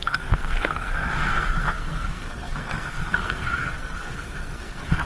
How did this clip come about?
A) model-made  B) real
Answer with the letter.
A